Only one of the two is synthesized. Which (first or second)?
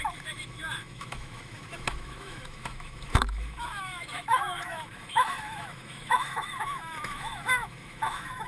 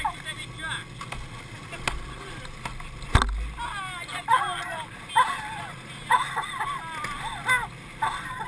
first